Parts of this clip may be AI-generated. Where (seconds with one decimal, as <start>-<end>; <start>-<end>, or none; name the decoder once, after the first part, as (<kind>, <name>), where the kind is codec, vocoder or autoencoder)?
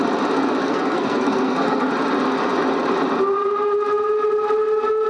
0.6-1.9 (codec, SNAC)